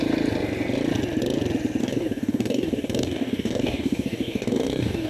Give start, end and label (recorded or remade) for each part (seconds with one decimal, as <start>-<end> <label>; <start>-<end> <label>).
0.0-1.8 recorded; 1.8-5.1 remade